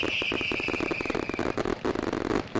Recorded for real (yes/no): no